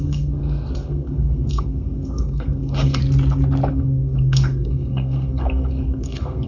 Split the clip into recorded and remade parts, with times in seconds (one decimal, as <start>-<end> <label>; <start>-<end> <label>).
0.0-3.0 remade; 3.0-3.7 recorded; 3.7-6.5 remade